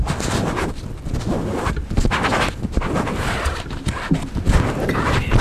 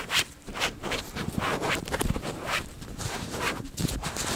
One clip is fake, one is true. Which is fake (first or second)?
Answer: second